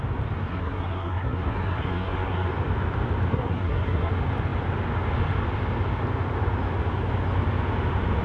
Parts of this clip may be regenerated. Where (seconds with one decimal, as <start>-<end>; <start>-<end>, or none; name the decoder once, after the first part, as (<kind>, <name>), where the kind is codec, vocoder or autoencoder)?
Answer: 0.5-2.5 (codec, SNAC); 3.3-4.1